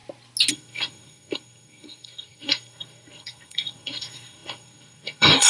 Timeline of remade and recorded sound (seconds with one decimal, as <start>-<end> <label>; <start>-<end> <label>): 0.0-0.5 recorded; 0.5-5.5 remade